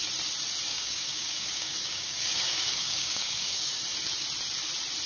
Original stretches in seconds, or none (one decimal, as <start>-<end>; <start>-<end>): 0.0-0.7; 3.8-5.1